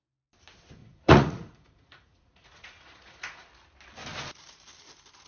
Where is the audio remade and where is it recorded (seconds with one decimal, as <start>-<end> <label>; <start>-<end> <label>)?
0.0-0.8 recorded; 0.8-3.5 remade; 3.5-5.3 recorded